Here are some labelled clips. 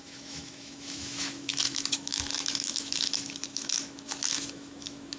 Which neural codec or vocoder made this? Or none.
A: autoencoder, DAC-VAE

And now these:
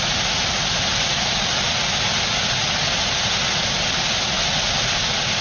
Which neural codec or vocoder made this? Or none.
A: none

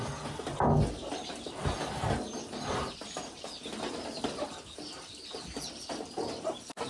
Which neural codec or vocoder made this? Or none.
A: none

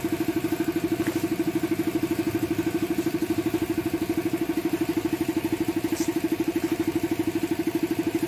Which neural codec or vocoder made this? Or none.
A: none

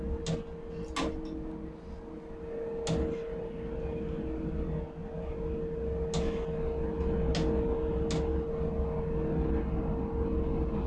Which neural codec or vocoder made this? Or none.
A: none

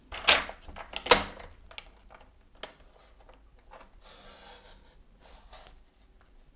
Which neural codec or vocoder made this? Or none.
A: none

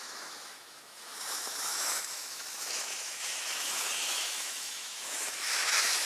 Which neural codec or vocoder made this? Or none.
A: autoencoder, DAC-VAE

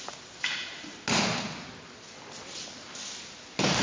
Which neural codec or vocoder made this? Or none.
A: none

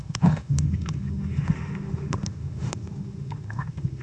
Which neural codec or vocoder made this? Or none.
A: autoencoder, DAC-VAE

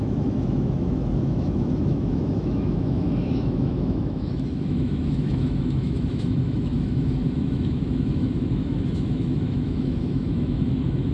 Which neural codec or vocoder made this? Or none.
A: autoencoder, DAC-VAE